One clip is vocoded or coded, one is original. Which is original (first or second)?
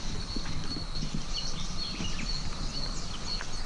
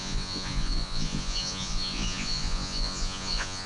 first